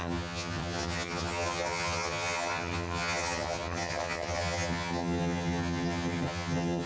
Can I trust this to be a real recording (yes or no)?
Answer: no